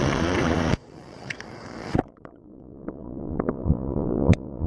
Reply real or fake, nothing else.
fake